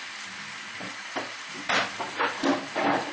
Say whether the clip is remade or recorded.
recorded